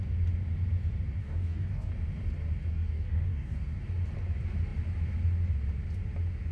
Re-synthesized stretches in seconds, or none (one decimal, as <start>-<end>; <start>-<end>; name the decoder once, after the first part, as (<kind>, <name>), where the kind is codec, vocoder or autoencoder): 1.2-1.9 (codec, DAC); 2.7-3.8